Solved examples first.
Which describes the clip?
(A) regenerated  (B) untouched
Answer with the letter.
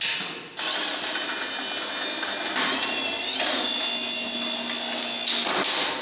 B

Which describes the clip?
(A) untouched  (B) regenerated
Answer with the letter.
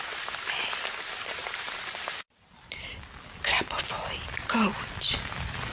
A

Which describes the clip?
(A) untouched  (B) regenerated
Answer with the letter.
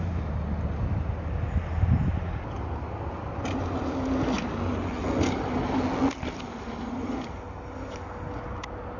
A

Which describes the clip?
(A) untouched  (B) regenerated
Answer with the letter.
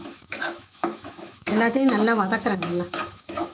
B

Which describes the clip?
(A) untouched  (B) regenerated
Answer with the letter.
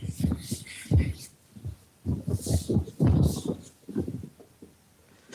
A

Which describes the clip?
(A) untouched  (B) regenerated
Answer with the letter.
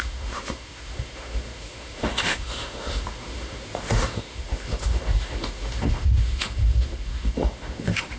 B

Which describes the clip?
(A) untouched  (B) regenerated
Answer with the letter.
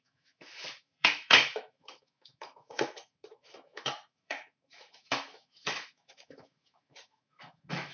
B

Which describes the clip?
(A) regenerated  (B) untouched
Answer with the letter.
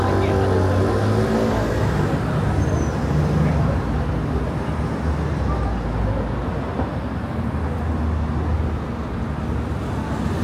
B